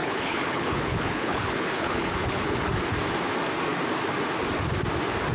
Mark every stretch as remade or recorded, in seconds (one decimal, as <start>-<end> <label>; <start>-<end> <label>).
0.0-2.8 remade; 2.8-5.3 recorded